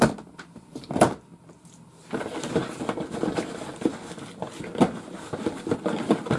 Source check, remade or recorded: recorded